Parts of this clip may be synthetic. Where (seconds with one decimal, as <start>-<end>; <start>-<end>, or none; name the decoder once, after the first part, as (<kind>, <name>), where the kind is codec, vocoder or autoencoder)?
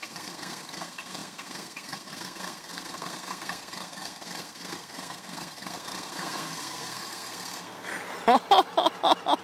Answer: 0.0-7.9 (codec, SNAC)